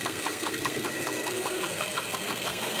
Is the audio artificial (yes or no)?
yes